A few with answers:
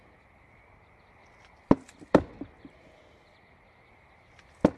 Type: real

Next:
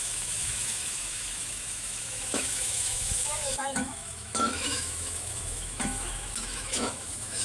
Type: fake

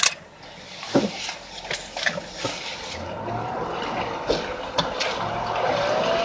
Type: real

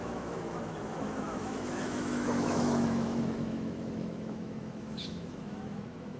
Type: fake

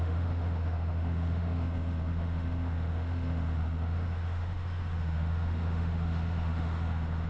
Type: fake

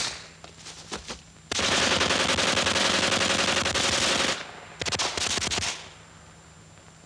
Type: real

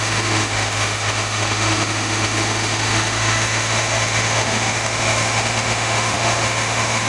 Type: fake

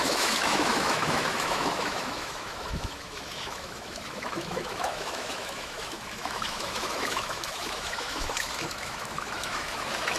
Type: fake